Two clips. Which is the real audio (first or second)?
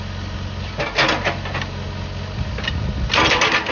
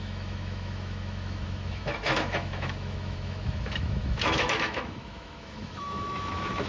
first